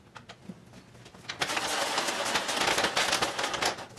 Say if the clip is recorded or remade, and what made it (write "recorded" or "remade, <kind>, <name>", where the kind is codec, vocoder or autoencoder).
recorded